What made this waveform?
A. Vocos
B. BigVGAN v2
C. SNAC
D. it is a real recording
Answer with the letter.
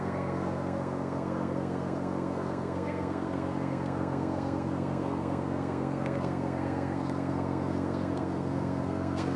C